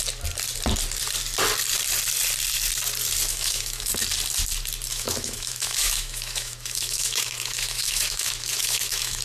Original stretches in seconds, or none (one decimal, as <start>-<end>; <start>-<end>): 0.0-3.3; 3.9-4.9